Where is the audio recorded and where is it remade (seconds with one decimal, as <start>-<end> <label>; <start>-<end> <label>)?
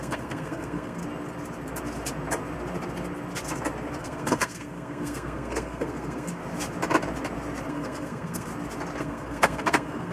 0.0-1.0 remade; 1.0-4.0 recorded; 4.0-6.4 remade; 6.4-7.7 recorded; 7.7-8.5 remade; 8.5-9.0 recorded; 9.0-10.1 remade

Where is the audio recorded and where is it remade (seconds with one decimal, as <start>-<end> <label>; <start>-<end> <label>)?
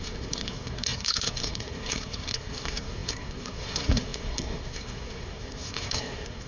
0.0-6.5 remade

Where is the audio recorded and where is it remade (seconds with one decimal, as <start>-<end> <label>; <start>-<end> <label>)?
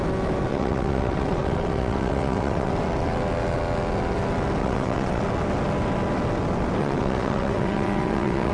0.0-0.5 recorded; 0.5-2.7 remade; 2.7-4.6 recorded; 4.6-5.2 remade; 5.2-6.8 recorded; 6.8-8.5 remade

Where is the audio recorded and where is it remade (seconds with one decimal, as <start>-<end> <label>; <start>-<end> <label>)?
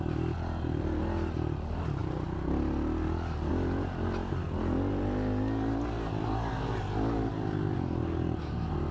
0.0-8.9 recorded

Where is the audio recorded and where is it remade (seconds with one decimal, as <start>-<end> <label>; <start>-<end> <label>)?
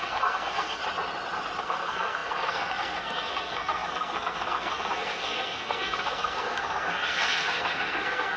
0.0-0.8 remade; 0.8-1.6 recorded; 1.6-8.4 remade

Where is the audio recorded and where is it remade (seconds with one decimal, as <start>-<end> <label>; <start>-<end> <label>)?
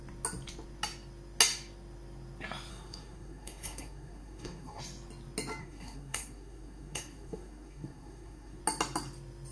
0.0-2.7 recorded; 2.7-4.8 remade; 4.8-5.6 recorded; 5.6-8.6 remade; 8.6-9.5 recorded